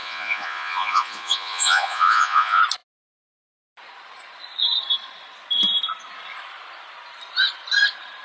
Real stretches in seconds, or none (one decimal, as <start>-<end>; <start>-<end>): 2.6-8.2